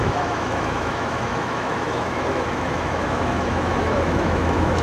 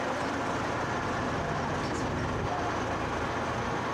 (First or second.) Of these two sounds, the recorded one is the second